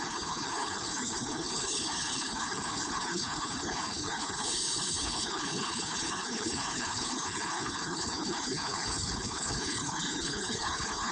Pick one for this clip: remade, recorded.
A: remade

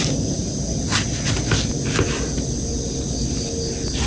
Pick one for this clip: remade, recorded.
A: recorded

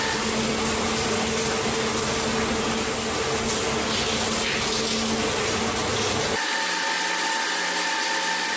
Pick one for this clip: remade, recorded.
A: recorded